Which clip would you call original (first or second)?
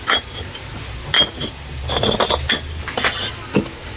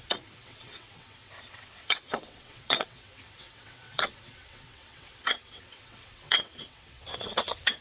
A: first